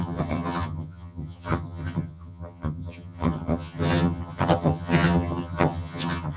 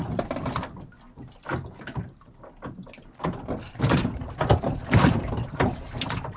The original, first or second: second